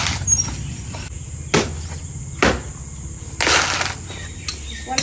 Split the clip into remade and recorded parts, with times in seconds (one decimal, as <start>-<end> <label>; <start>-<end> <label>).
0.0-5.0 recorded